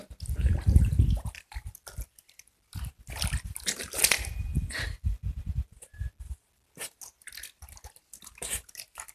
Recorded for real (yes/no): yes